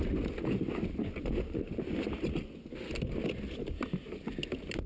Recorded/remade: recorded